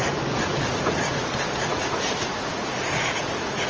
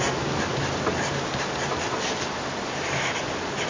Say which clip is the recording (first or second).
second